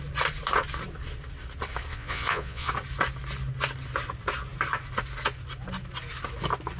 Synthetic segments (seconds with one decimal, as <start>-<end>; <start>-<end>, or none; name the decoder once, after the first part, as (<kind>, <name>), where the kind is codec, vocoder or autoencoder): 1.9-2.7 (vocoder, Vocos)